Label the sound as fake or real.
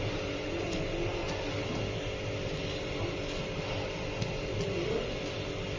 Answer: real